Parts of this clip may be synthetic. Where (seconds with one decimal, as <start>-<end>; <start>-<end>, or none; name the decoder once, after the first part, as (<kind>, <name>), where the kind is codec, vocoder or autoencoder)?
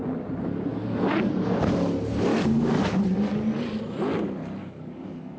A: 0.7-1.3 (codec, DAC); 2.3-2.8; 4.6-5.4